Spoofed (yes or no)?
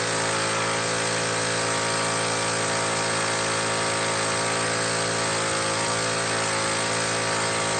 no